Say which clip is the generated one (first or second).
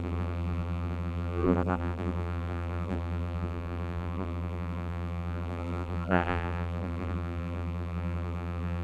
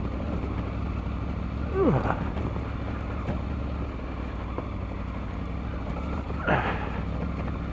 first